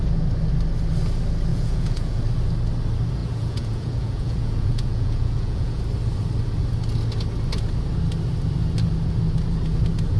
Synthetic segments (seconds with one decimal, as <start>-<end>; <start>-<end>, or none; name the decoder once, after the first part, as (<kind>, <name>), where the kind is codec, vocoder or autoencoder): 1.5-2.2 (vocoder, Vocos); 3.2-5.8